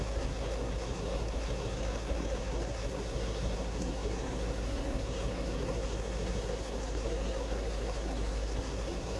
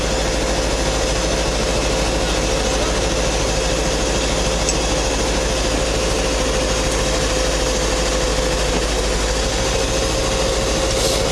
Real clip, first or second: second